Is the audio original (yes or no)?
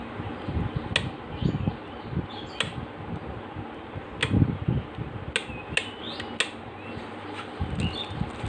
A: yes